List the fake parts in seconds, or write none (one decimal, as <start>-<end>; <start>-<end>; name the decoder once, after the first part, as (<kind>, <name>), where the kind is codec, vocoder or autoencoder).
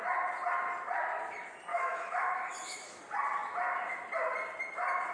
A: 1.7-3.0 (autoencoder, DAC-VAE)